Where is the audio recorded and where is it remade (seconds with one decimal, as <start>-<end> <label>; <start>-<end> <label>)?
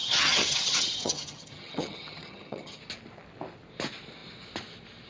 0.0-2.8 remade; 2.8-5.1 recorded